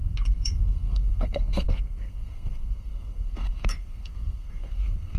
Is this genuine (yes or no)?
no